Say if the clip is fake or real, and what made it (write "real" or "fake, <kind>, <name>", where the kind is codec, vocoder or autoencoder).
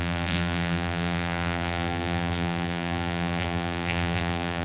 fake, vocoder, BigVGAN v2